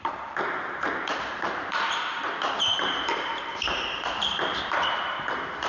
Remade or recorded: remade